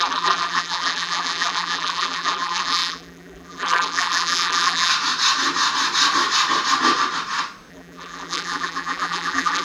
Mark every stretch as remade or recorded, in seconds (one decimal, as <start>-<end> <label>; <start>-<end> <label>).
0.0-4.9 remade; 4.9-7.7 recorded; 7.7-9.6 remade